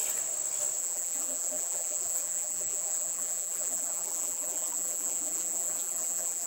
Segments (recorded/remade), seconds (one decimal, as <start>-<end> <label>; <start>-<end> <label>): 0.0-0.8 recorded; 0.8-6.5 remade